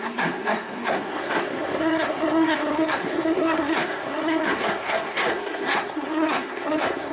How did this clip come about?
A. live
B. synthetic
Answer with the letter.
B